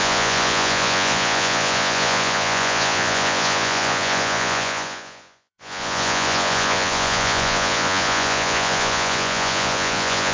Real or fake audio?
fake